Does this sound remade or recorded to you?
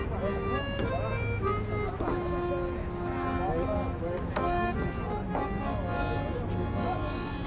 recorded